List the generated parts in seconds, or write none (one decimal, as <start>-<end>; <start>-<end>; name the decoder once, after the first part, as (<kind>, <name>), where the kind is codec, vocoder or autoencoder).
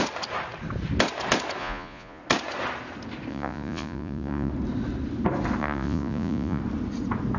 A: 1.6-2.2 (vocoder, Vocos); 3.3-4.5; 5.6-6.6